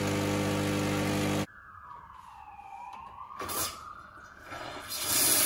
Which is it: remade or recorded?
recorded